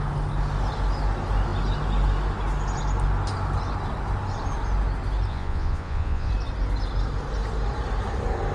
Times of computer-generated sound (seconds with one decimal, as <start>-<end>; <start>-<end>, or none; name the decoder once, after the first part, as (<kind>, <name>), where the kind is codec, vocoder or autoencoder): 5.3-6.3 (vocoder, Vocos)